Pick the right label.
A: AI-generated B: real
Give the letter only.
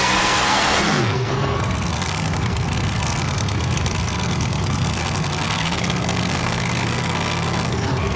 A